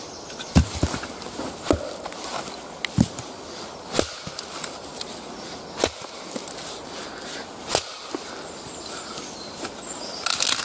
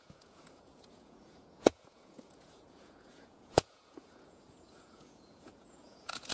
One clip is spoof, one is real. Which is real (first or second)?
first